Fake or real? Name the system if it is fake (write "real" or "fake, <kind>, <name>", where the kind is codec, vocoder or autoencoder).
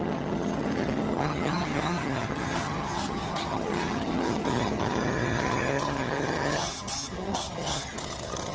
fake, vocoder, HiFi-GAN